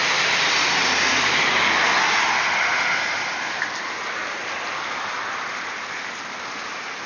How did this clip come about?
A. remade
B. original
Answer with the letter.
B